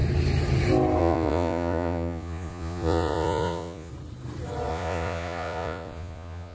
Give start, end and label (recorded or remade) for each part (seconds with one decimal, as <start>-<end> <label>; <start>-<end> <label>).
0.0-1.0 recorded; 1.0-3.9 remade; 3.9-4.7 recorded; 4.7-6.5 remade